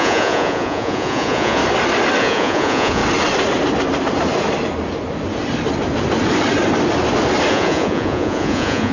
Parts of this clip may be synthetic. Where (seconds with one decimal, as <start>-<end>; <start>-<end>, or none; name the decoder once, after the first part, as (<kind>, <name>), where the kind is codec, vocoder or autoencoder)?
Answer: 0.0-1.6 (vocoder, Vocos); 2.2-3.0; 7.5-8.9

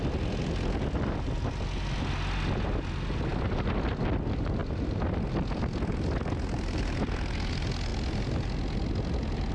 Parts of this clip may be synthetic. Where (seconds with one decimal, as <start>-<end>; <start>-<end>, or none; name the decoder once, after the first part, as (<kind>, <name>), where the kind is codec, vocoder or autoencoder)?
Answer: none

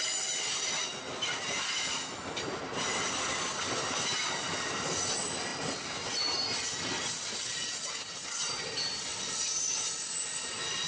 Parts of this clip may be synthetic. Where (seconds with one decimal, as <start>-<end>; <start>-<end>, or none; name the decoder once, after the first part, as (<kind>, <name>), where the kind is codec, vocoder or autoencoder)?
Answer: none

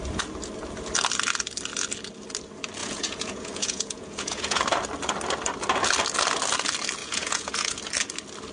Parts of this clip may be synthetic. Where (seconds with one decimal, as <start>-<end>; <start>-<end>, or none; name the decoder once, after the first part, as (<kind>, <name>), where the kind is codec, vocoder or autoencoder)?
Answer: 2.8-4.6 (vocoder, Vocos); 7.0-7.8

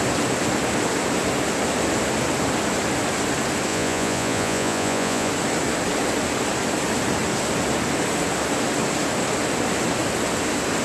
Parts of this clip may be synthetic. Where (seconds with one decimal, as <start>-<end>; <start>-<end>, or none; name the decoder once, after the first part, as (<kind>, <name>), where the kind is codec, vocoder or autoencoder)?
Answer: 3.7-5.3 (vocoder, Vocos)

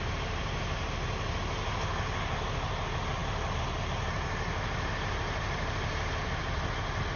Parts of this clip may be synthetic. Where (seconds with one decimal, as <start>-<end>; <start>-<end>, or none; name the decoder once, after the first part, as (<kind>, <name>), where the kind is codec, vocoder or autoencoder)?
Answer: none